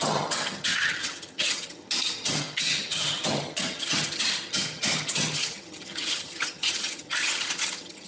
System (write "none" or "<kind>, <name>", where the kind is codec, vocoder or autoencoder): vocoder, HiFi-GAN